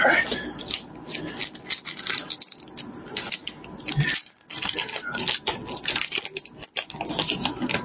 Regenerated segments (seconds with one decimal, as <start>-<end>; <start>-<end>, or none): none

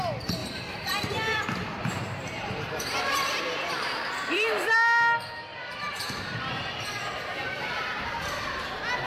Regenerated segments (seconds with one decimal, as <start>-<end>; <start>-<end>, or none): 0.4-4.7; 5.5-8.7

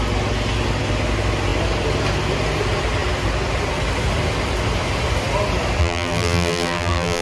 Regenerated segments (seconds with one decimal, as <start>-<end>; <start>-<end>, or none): 5.8-7.2

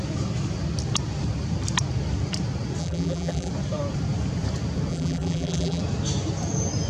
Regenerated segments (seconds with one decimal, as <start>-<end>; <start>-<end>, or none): 2.8-3.5; 4.9-5.8